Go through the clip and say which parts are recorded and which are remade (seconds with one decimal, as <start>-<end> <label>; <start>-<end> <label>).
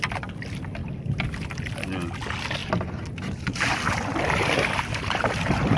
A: 0.0-5.8 recorded